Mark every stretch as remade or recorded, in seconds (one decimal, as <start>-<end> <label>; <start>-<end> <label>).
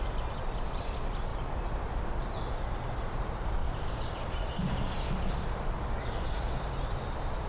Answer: 0.0-3.6 recorded; 3.6-4.7 remade; 4.7-7.5 recorded